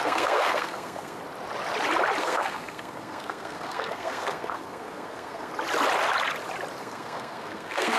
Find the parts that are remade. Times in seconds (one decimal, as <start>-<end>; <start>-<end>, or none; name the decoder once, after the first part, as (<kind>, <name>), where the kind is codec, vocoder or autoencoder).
0.0-1.2 (codec, SNAC); 2.2-5.5; 6.8-8.0